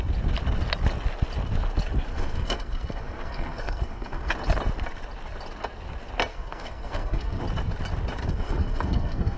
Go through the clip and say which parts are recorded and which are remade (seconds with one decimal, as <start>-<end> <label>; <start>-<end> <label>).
0.0-2.1 recorded; 2.1-4.3 remade; 4.3-6.3 recorded; 6.3-7.4 remade; 7.4-8.2 recorded; 8.2-9.4 remade